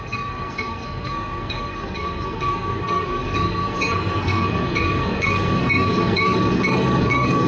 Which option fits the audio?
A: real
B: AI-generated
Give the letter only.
B